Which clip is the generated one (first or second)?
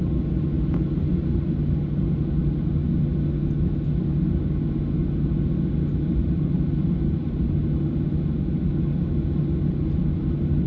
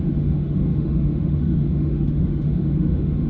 second